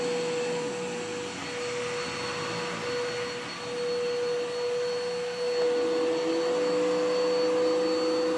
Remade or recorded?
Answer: recorded